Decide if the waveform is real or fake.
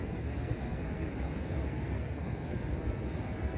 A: fake